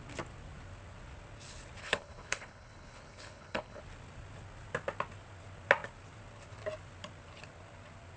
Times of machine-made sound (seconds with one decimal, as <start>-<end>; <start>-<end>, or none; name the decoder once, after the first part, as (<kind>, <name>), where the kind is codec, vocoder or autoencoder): 1.8-3.8 (codec, HILCodec)